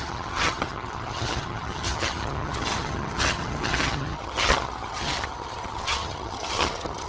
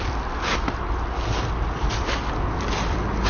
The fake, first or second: first